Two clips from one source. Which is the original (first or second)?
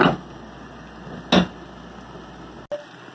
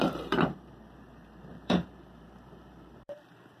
first